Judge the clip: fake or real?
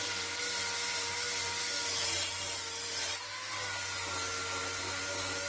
real